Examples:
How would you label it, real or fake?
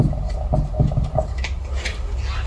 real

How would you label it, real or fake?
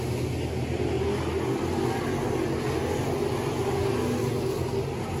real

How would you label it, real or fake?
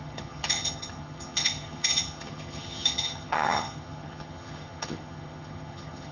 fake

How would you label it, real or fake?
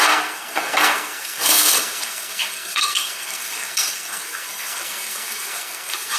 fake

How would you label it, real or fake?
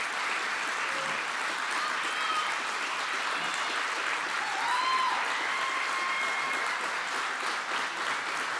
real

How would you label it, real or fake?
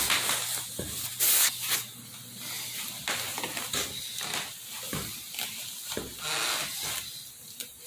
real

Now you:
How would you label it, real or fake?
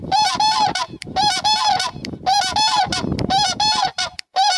fake